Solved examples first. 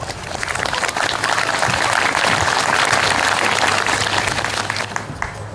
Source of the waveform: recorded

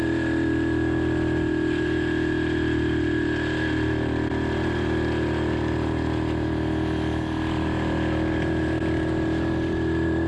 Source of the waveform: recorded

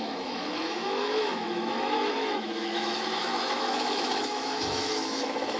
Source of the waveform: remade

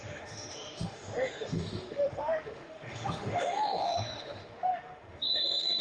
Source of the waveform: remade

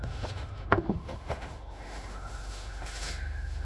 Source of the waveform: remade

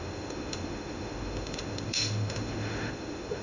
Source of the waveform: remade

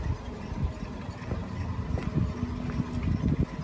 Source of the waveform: recorded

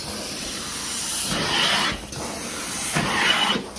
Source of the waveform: recorded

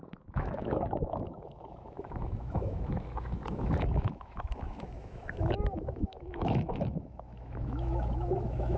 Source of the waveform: remade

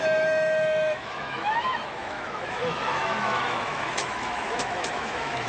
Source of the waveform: remade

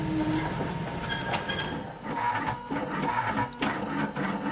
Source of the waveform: recorded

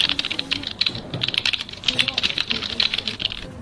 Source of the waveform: recorded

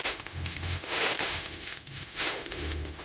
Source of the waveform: remade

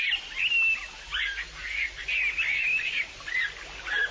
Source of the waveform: recorded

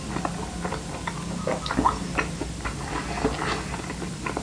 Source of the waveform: recorded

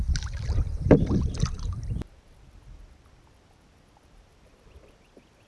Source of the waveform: recorded